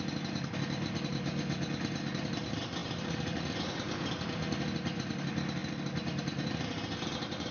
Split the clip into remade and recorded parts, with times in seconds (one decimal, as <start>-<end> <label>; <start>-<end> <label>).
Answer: 0.0-7.5 recorded